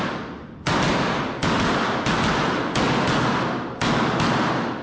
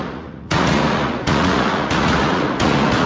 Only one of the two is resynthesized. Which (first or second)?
second